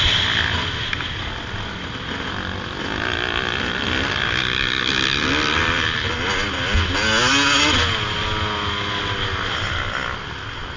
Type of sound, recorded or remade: recorded